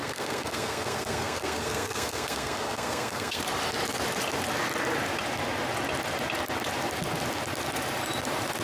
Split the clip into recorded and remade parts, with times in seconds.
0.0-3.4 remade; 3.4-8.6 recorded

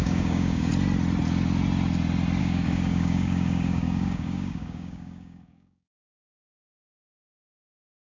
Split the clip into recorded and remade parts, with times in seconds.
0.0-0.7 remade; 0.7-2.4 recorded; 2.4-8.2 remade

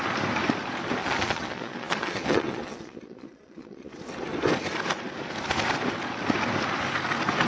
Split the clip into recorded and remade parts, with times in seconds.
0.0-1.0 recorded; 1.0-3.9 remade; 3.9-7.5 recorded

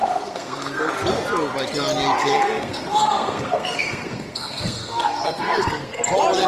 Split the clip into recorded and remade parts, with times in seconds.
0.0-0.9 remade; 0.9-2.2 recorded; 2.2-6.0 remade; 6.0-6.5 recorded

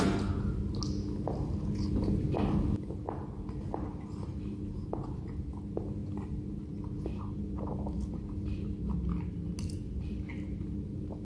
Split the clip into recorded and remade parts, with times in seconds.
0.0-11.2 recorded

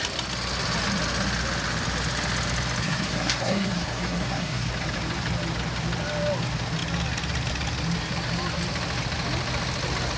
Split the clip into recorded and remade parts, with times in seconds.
0.0-2.8 recorded; 2.8-4.7 remade; 4.7-10.2 recorded

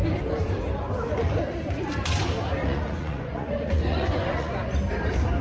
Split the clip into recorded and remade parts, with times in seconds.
0.0-2.6 recorded; 2.6-4.5 remade; 4.5-5.4 recorded